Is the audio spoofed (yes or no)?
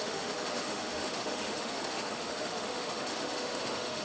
yes